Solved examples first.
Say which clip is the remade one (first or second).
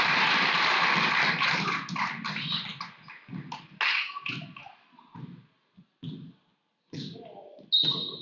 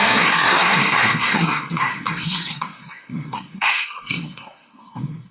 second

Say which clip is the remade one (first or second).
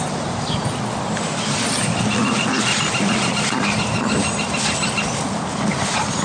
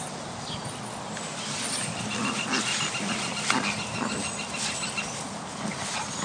first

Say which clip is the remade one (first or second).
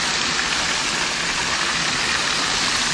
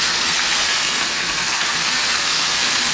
second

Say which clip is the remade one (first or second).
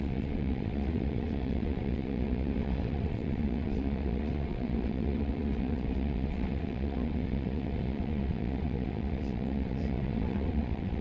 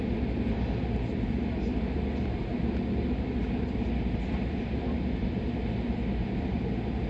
first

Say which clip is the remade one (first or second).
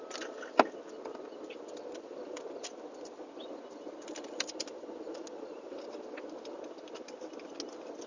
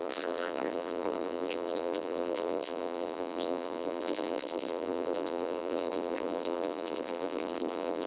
second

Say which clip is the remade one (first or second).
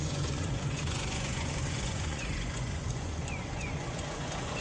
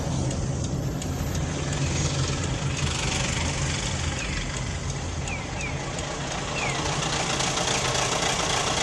first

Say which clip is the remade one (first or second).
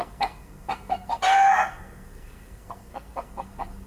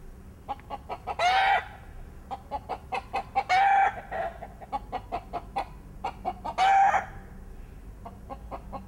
first